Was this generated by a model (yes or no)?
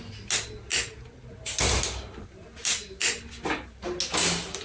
no